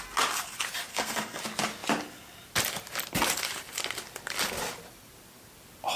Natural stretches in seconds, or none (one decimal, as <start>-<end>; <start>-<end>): 0.0-0.9; 1.4-6.0